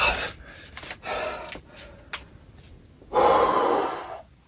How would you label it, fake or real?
real